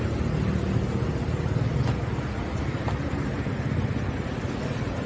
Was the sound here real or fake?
real